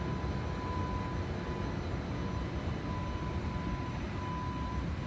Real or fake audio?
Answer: real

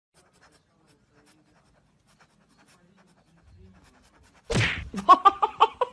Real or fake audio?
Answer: real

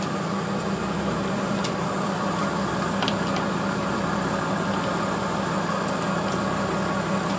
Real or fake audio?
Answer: real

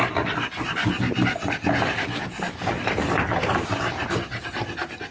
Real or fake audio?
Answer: real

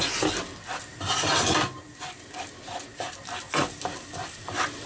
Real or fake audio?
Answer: real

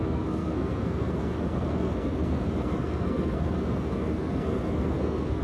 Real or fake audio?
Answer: fake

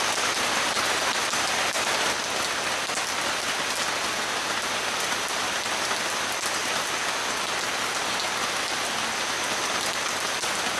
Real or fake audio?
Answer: real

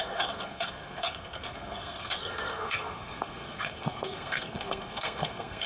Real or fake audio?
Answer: fake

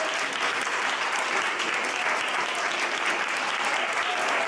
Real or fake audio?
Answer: real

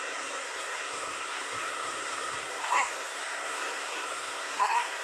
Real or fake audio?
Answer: fake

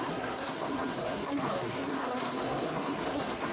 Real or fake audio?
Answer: fake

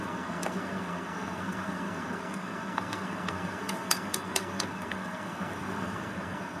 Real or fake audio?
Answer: fake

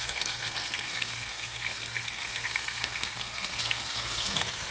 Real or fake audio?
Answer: fake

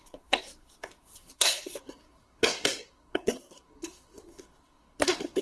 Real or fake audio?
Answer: fake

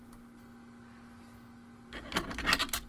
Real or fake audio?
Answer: real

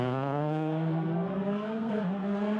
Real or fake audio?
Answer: fake